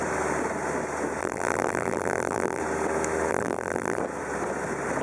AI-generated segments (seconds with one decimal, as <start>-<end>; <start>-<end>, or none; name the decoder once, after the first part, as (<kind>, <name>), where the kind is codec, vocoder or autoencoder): 1.2-2.6 (vocoder, BigVGAN v2); 3.3-4.0